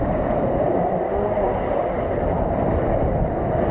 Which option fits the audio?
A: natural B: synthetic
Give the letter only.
A